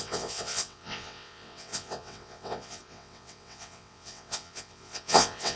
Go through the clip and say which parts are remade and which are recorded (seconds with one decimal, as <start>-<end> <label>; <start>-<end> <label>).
0.0-5.6 remade